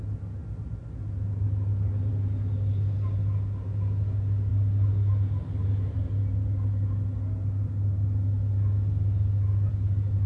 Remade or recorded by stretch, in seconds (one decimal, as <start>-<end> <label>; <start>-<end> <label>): 0.0-10.3 recorded